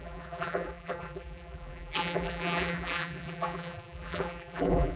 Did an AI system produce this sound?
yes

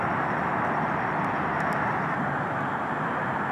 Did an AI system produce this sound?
yes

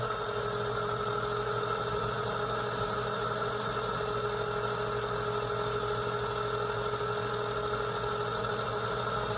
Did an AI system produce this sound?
no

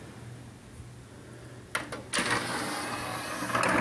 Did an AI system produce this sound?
no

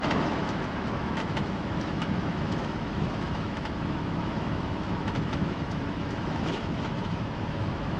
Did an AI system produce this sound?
yes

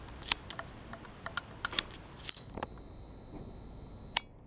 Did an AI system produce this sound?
no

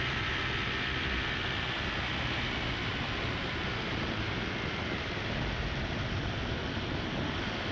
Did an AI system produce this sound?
no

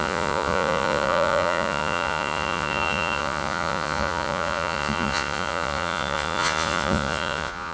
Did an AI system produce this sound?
yes